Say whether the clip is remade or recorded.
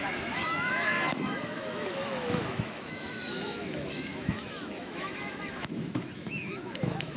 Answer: remade